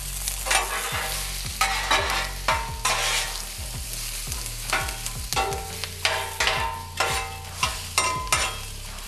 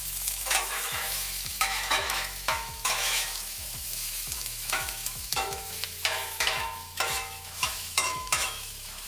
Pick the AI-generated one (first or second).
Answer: second